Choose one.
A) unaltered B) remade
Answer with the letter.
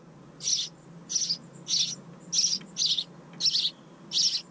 A